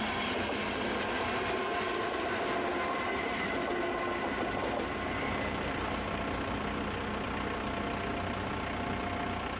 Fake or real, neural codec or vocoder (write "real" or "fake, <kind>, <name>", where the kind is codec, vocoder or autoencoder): real